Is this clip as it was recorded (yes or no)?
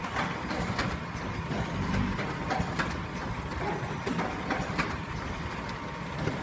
no